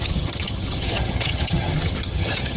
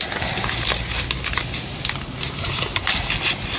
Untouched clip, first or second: second